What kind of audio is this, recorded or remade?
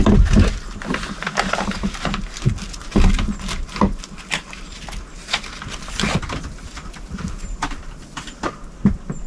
recorded